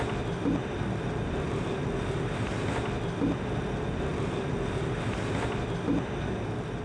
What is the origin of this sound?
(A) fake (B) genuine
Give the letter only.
B